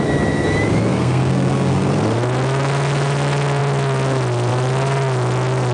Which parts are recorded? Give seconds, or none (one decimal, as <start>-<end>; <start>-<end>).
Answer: 0.0-0.9; 1.9-5.7